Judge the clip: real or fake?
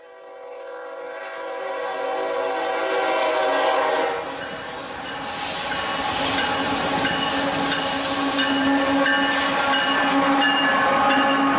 real